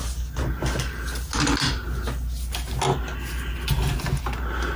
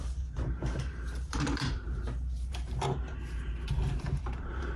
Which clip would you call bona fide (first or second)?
first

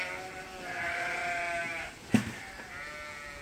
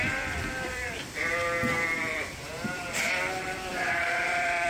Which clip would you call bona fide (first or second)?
first